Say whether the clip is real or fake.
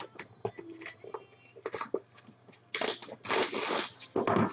real